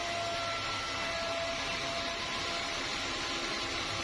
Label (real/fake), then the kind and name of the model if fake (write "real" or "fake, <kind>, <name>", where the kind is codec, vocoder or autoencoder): real